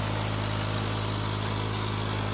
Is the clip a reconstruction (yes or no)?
no